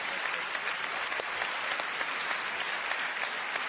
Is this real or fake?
real